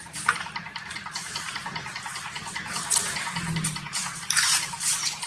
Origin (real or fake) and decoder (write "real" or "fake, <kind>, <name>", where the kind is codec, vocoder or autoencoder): fake, vocoder, BigVGAN v2